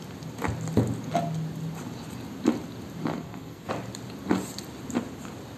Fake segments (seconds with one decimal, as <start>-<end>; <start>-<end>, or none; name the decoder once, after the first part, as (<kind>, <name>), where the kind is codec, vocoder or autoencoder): 3.1-3.7 (codec, SNAC)